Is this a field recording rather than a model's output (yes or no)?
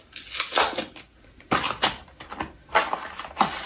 yes